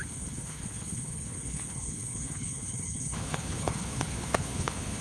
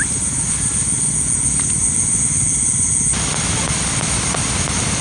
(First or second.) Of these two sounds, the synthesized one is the first